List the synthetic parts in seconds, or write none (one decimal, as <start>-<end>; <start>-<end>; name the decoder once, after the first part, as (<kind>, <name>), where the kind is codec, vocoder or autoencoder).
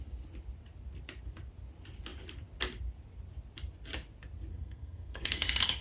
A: 4.5-5.8 (codec, SNAC)